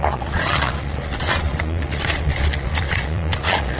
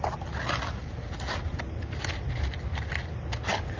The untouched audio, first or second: second